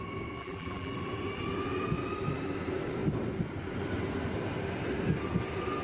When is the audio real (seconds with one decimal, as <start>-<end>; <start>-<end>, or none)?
0.0-0.4; 0.9-5.8